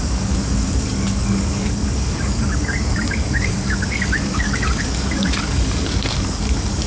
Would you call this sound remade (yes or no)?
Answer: yes